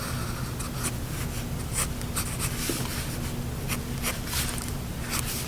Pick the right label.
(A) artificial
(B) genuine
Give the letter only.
B